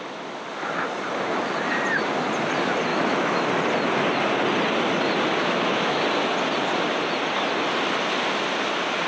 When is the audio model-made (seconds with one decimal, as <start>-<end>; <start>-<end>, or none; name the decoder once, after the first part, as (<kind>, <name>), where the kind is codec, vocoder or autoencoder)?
2.9-3.5 (autoencoder, DAC-VAE); 5.4-6.0